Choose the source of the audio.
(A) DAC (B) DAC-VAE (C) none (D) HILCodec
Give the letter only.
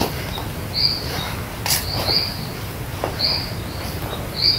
C